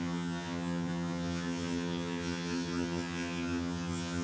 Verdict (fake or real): fake